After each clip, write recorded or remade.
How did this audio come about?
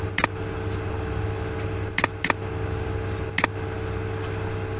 recorded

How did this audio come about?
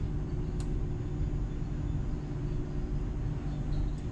recorded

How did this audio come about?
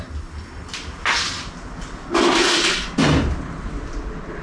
recorded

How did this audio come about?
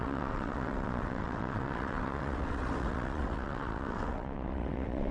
remade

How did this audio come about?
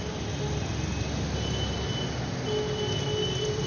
recorded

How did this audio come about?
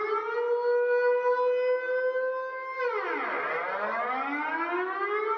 recorded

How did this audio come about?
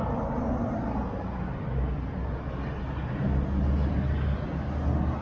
recorded